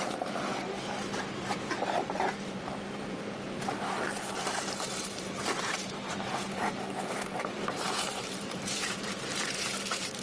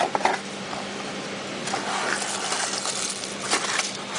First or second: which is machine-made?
first